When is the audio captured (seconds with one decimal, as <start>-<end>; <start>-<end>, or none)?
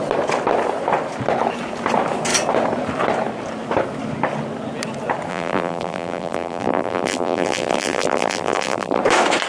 0.0-5.3; 9.0-9.5